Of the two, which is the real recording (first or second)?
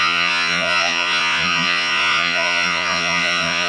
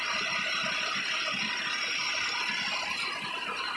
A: second